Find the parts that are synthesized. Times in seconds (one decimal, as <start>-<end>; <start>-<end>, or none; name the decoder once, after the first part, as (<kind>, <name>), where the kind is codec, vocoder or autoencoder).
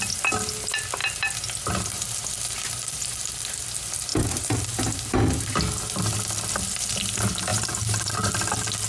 4.1-5.1 (vocoder, BigVGAN v2); 7.5-8.1